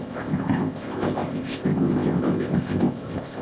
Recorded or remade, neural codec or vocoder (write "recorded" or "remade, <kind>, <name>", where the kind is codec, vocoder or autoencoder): remade, codec, ZipCodec